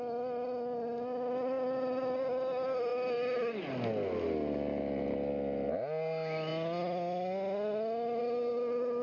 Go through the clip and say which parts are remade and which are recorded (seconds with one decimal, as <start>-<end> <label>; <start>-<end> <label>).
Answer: 0.0-9.0 recorded